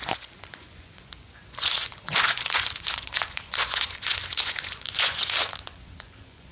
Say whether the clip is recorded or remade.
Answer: remade